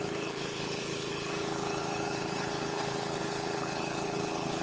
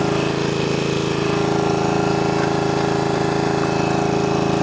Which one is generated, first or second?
first